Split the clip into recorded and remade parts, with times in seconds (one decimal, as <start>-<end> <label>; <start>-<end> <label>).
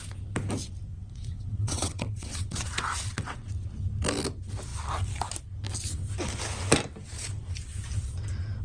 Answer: 0.0-0.9 recorded; 0.9-3.5 remade; 3.5-8.6 recorded